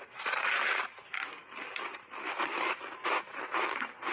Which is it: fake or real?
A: real